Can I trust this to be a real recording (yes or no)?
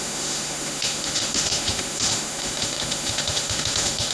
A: no